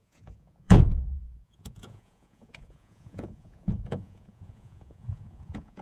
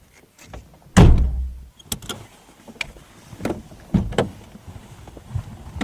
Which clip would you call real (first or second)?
second